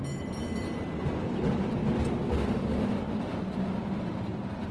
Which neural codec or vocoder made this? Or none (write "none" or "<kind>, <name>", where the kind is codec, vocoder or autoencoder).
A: none